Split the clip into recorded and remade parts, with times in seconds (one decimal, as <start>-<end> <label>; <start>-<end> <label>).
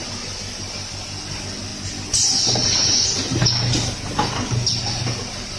0.0-5.6 recorded